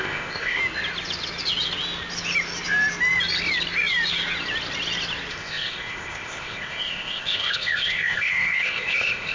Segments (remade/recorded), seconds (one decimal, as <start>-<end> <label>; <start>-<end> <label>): 0.0-0.6 remade; 0.6-5.3 recorded; 5.3-9.3 remade